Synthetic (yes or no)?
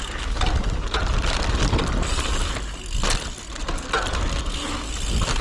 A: no